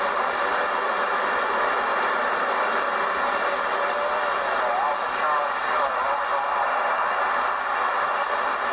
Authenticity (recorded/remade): recorded